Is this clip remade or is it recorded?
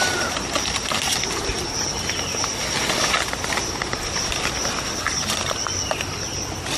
recorded